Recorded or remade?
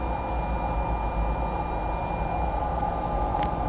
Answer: recorded